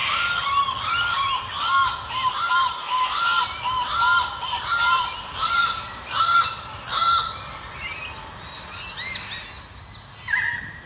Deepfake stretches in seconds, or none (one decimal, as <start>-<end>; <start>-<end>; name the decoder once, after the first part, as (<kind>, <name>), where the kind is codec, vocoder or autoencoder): none